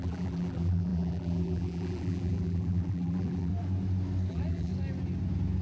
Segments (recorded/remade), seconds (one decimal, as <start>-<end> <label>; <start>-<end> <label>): 0.0-3.5 remade; 3.5-4.3 recorded; 4.3-4.7 remade; 4.7-5.6 recorded